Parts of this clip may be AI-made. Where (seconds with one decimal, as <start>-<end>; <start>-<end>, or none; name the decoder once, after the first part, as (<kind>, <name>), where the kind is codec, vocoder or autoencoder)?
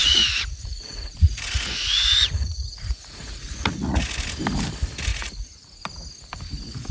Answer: 0.0-4.1 (vocoder, Vocos); 5.1-5.8